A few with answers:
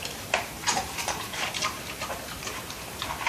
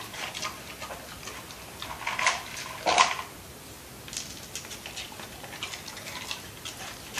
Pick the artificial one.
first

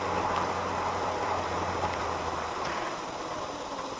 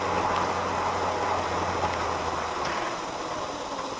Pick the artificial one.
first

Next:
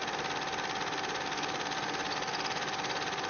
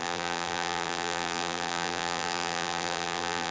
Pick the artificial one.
second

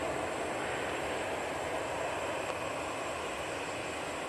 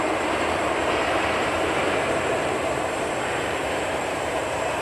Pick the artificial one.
second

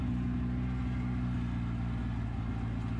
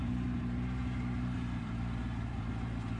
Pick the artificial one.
second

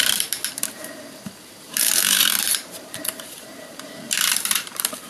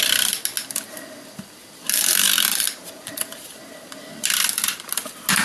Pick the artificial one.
first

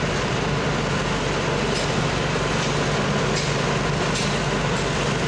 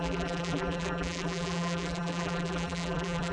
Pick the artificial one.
second